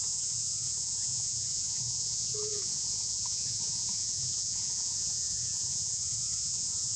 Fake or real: fake